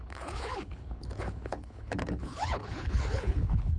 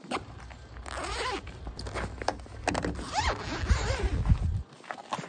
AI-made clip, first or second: first